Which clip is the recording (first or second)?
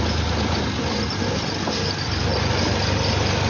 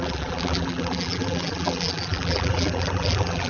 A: first